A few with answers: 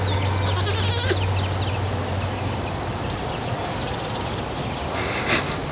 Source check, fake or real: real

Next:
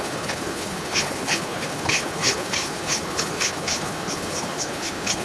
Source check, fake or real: fake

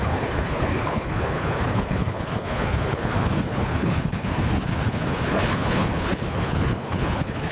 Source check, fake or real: fake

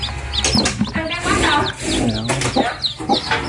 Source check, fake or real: real